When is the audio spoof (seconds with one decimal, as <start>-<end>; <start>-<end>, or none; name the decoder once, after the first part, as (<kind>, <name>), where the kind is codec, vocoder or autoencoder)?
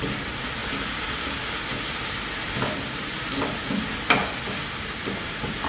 none